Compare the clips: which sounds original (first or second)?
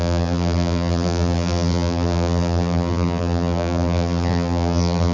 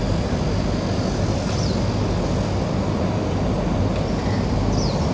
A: second